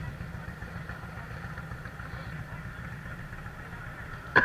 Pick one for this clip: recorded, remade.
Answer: recorded